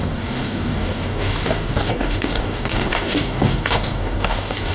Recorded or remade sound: remade